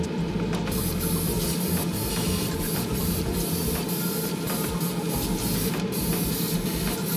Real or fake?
real